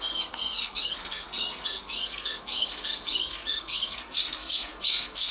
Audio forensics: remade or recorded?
remade